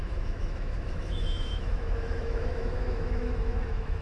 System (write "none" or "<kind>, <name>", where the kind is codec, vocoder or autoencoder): autoencoder, DAC-VAE